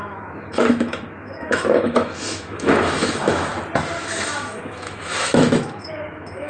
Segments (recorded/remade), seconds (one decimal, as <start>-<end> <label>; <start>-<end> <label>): 0.0-3.5 remade; 3.5-4.0 recorded; 4.0-6.5 remade